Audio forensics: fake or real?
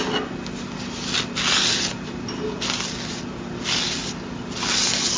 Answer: real